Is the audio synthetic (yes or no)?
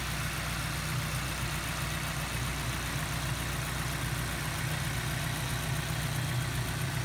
no